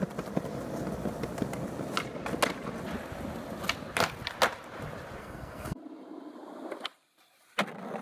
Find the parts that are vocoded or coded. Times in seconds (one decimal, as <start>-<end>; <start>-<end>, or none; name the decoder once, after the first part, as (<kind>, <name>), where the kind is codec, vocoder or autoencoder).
5.2-5.8 (codec, SNAC)